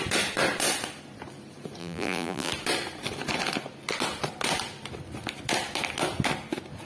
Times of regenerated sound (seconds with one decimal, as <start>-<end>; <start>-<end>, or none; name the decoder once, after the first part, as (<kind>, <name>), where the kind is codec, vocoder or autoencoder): 1.8-2.5 (vocoder, BigVGAN v2)